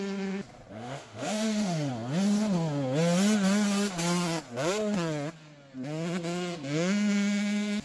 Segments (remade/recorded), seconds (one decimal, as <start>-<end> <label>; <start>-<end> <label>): 0.0-0.7 recorded; 0.7-1.9 remade; 1.9-7.8 recorded